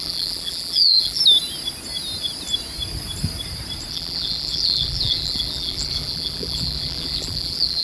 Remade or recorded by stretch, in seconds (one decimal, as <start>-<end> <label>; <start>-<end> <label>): 0.0-1.2 remade; 1.2-3.9 recorded; 3.9-7.8 remade

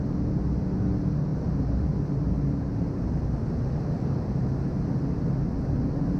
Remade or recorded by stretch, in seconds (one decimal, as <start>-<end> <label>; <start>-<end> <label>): 0.0-1.3 recorded; 1.3-4.7 remade; 4.7-6.2 recorded

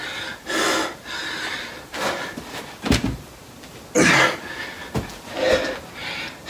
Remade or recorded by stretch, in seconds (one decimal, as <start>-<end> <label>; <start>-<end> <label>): 0.0-6.5 recorded

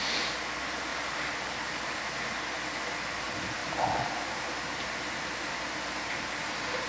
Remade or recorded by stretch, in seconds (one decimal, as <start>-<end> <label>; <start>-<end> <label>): 0.0-0.9 recorded; 0.9-2.0 remade; 2.0-3.6 recorded; 3.6-6.3 remade; 6.3-6.9 recorded

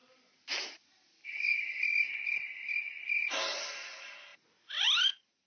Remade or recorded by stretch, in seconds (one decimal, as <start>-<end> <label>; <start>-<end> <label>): 0.0-1.1 recorded; 1.1-2.1 remade; 2.1-3.8 recorded; 3.8-4.3 remade; 4.3-5.5 recorded

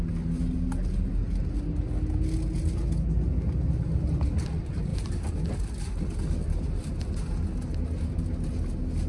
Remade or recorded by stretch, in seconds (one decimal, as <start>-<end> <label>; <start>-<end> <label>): 0.0-4.9 recorded; 4.9-5.4 remade; 5.4-9.1 recorded

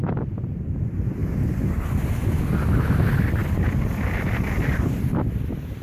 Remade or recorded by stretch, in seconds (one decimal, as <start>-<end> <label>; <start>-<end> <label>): 0.0-0.7 remade; 0.7-1.2 recorded; 1.2-1.7 remade; 1.7-5.8 recorded